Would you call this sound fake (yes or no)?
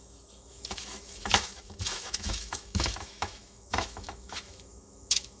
yes